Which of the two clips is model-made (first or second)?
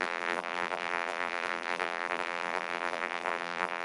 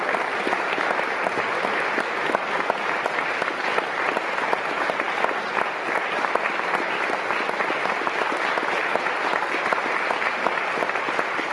first